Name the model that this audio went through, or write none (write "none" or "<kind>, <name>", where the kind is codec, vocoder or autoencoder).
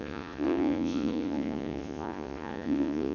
vocoder, Vocos